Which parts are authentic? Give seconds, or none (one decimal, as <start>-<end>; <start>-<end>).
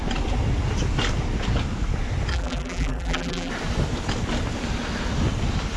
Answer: 0.0-2.3; 3.5-5.8